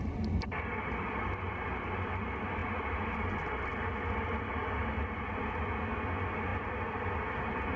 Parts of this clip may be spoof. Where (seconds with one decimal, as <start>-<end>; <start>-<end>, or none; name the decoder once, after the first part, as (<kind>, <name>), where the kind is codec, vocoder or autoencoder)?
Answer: none